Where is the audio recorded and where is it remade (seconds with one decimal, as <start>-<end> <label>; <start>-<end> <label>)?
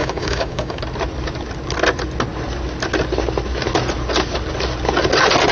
0.0-0.8 remade; 0.8-5.5 recorded